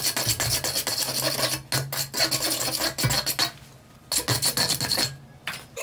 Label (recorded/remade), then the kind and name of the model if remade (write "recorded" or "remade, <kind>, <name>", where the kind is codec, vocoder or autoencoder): recorded